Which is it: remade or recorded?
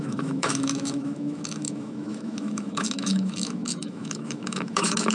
remade